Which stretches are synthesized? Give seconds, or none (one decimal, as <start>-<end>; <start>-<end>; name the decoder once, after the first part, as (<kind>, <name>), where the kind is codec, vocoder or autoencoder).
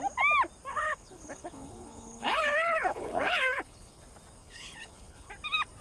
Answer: 0.7-4.0 (codec, HILCodec); 4.4-5.3